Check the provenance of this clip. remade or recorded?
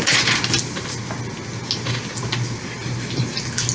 recorded